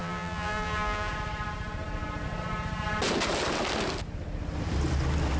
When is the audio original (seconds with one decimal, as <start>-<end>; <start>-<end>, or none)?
1.1-5.4